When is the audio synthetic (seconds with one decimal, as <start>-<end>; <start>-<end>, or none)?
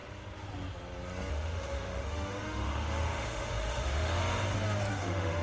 1.3-4.2; 4.9-5.4